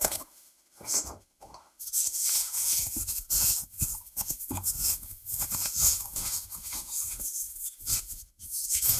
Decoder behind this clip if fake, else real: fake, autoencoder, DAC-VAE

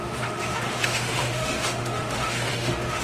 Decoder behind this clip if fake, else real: fake, autoencoder, DAC-VAE